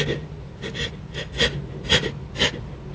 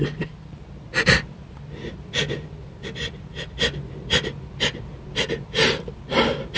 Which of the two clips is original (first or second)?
first